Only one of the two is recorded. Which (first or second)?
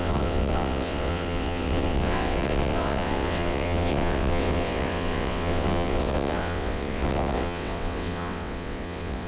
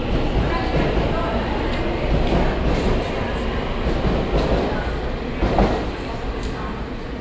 second